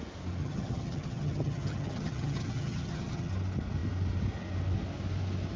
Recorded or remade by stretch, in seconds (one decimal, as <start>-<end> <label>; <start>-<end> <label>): 0.0-0.4 recorded; 0.4-3.3 remade; 3.3-5.6 recorded